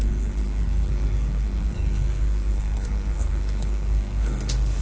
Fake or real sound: fake